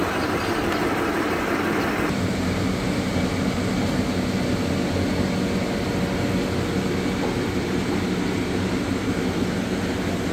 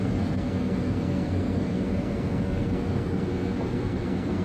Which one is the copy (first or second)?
second